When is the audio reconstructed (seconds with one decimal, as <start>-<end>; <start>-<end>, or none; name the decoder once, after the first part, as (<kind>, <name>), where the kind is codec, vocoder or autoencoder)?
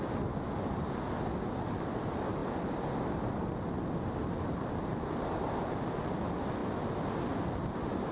none